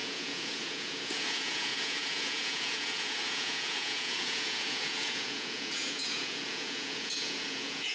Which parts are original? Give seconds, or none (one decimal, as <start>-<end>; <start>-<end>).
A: none